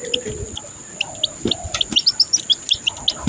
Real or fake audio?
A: real